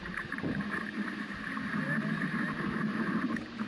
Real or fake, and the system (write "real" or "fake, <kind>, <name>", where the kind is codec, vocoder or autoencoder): fake, vocoder, BigVGAN v2